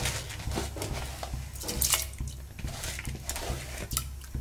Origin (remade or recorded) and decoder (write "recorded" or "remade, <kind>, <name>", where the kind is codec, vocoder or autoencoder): recorded